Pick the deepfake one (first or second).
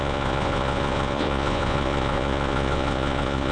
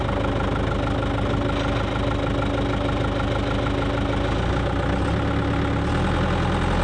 first